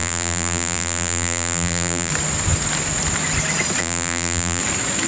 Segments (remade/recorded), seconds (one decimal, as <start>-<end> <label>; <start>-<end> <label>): 0.0-2.1 remade; 2.1-3.8 recorded; 3.8-4.6 remade; 4.6-5.1 recorded

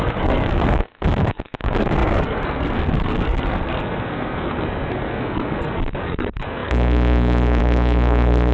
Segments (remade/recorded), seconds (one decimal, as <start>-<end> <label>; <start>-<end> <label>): 0.0-8.5 remade

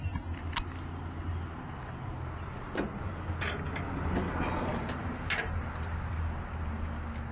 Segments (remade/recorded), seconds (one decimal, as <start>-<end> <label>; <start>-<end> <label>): 0.0-7.3 recorded

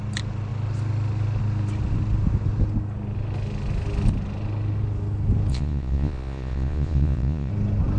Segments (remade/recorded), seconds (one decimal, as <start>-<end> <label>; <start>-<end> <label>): 0.0-5.5 recorded; 5.5-7.5 remade; 7.5-8.0 recorded

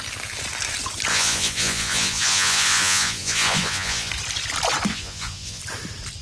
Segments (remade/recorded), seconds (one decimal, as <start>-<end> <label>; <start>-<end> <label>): 0.0-1.1 recorded; 1.1-4.1 remade; 4.1-4.9 recorded; 4.9-5.6 remade; 5.6-6.2 recorded

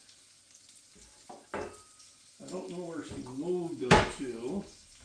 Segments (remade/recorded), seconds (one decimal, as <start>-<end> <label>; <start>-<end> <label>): 0.0-0.4 remade; 0.4-2.0 recorded; 2.0-3.0 remade; 3.0-3.7 recorded; 3.7-5.0 remade

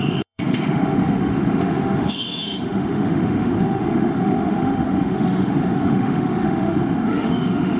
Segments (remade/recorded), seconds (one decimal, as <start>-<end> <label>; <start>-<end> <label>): 0.0-7.8 remade

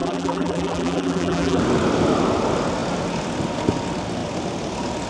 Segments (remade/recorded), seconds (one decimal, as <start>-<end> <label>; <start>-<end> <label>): 0.0-1.6 remade; 1.6-5.1 recorded